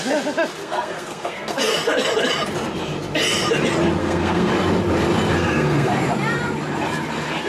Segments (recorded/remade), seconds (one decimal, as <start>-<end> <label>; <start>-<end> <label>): 0.0-0.6 recorded; 0.6-1.6 remade; 1.6-4.0 recorded; 4.0-4.5 remade; 4.5-5.4 recorded; 5.4-5.9 remade; 5.9-7.5 recorded